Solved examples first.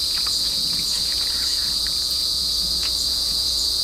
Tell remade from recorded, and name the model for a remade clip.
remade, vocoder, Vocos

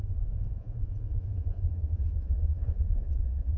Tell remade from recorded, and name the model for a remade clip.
remade, vocoder, Vocos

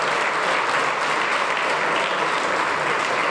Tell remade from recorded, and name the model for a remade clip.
recorded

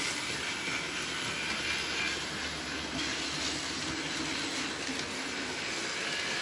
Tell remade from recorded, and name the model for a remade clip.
recorded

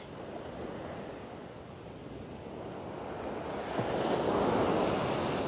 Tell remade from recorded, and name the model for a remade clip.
recorded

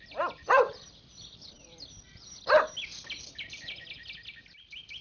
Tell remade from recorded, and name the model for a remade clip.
recorded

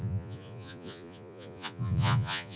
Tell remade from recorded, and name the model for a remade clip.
remade, vocoder, Vocos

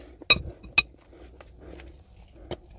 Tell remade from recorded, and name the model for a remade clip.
recorded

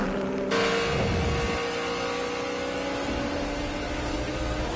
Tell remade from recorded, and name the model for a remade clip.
recorded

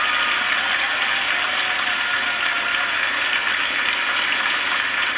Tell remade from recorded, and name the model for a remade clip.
recorded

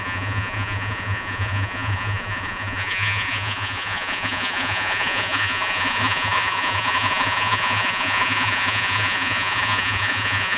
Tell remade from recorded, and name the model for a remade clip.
remade, vocoder, Vocos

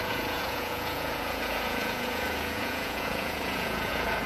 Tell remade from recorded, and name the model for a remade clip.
remade, vocoder, Vocos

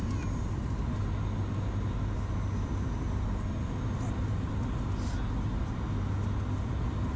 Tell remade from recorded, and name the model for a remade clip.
recorded